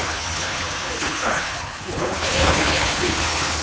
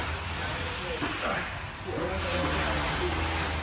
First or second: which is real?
second